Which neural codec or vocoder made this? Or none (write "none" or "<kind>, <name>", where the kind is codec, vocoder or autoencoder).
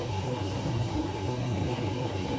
codec, SNAC